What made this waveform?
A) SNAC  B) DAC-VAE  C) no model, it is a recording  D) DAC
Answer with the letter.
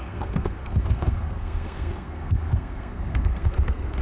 A